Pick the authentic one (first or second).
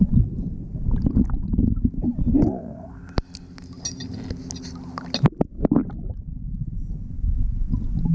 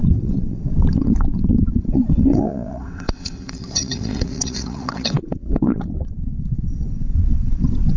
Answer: first